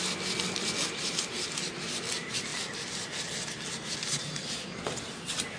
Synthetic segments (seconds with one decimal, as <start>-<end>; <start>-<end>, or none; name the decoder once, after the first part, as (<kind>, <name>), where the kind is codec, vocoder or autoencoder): none